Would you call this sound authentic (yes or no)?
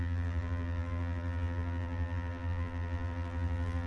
no